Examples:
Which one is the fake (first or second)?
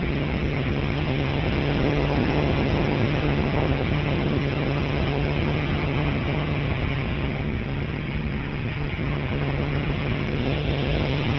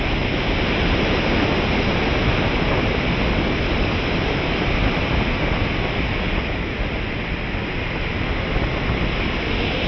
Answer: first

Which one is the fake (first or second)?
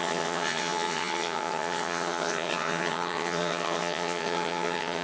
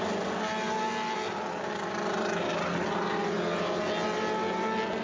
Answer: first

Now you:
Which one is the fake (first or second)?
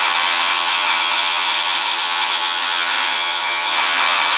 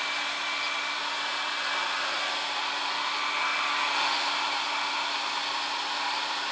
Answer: first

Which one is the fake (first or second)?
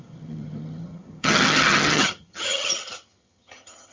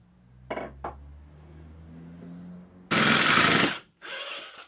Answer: first